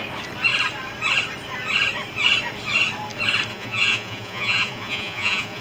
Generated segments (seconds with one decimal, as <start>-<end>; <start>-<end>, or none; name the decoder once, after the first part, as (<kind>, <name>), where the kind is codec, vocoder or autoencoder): 3.5-5.6 (vocoder, Vocos)